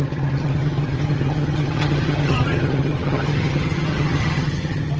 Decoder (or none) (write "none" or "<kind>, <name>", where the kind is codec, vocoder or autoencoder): vocoder, HiFi-GAN